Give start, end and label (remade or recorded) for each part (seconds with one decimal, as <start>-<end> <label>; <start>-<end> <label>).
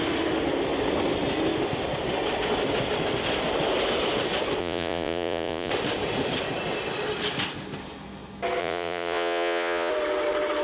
0.0-4.6 recorded; 4.6-5.7 remade; 5.7-8.6 recorded; 8.6-9.9 remade; 9.9-10.6 recorded